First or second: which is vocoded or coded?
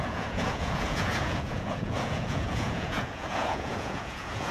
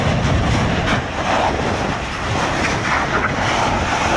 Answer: first